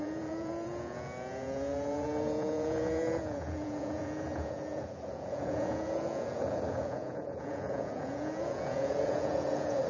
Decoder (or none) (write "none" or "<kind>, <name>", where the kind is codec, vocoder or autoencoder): vocoder, Vocos